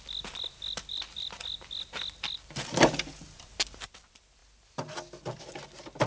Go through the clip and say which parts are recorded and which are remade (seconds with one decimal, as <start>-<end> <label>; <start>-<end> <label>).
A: 0.0-0.9 recorded; 0.9-3.5 remade; 3.5-6.1 recorded